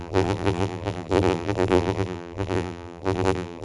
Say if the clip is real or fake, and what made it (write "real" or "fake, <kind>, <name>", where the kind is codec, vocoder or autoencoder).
fake, vocoder, BigVGAN v2